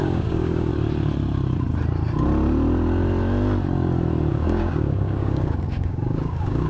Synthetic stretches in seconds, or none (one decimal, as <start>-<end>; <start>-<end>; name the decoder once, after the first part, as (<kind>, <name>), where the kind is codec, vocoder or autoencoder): 0.0-0.7 (codec, DAC); 4.3-6.7